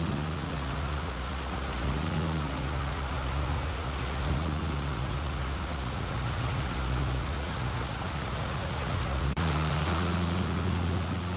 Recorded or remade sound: remade